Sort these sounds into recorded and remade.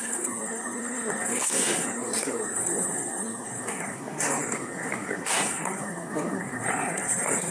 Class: remade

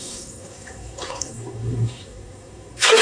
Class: remade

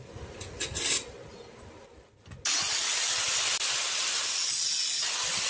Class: recorded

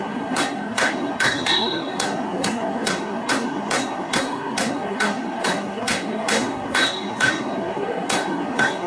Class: remade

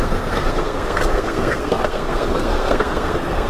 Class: remade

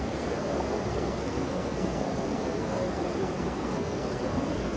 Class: remade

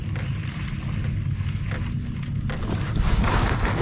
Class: recorded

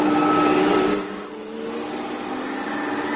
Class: recorded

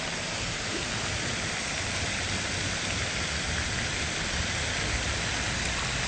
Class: recorded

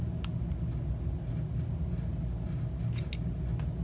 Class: recorded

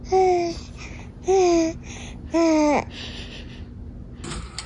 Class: recorded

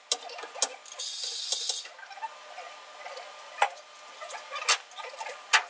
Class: recorded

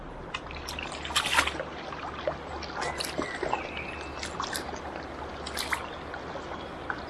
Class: recorded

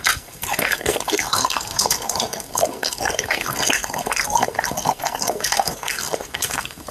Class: remade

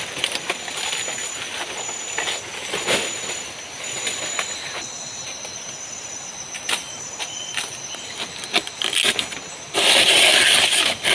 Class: recorded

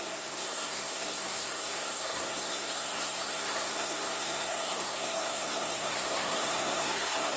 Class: remade